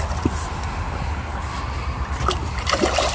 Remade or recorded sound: recorded